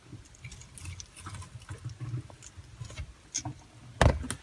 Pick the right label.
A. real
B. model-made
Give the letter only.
A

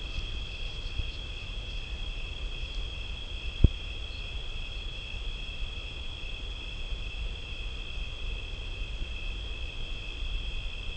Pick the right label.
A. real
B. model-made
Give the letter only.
A